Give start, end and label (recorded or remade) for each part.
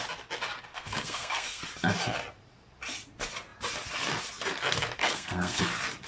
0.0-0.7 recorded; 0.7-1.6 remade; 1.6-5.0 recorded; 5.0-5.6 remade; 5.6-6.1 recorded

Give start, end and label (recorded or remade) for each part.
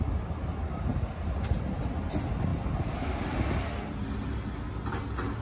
0.0-5.4 recorded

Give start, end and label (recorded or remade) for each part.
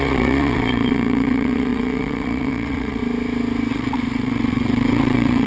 0.0-3.0 remade; 3.0-3.7 recorded; 3.7-5.5 remade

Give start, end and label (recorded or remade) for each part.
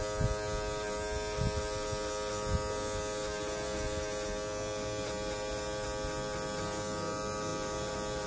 0.0-8.3 recorded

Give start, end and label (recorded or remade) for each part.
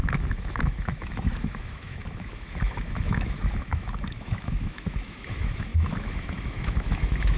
0.0-7.4 remade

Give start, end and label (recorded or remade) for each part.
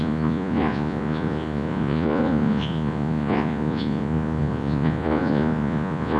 0.0-6.2 remade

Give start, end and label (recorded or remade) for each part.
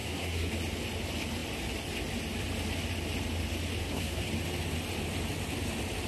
0.0-0.5 remade; 0.5-3.8 recorded; 3.8-4.3 remade; 4.3-6.1 recorded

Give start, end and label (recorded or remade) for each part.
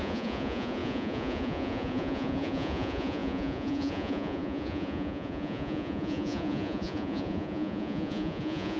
0.0-8.8 remade